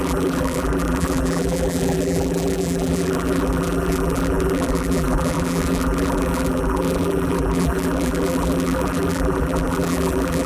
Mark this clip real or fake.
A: fake